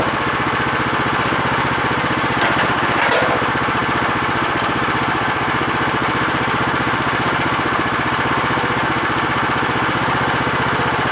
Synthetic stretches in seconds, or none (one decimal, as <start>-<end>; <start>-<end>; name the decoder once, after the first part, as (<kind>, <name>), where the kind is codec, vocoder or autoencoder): 6.0-8.3 (vocoder, BigVGAN v2)